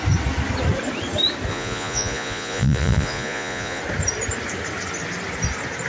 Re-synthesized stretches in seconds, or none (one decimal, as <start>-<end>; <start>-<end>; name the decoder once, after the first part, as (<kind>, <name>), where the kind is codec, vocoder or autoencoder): 1.5-3.8 (vocoder, Vocos)